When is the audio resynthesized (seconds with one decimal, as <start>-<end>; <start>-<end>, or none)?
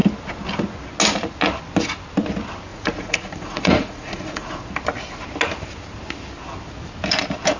2.7-4.7